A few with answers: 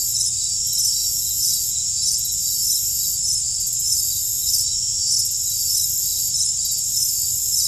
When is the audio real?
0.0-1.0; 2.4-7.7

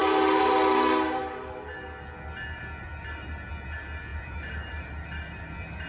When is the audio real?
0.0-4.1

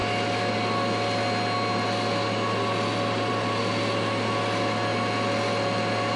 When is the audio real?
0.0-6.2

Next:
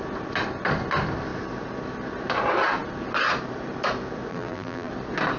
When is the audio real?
0.0-4.3; 4.9-5.4

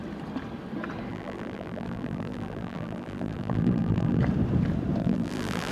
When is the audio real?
0.0-1.1; 4.2-5.0